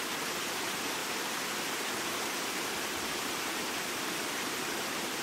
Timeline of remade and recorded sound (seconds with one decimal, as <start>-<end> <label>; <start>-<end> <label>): 0.0-5.2 remade